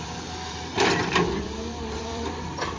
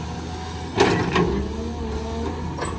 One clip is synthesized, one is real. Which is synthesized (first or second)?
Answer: first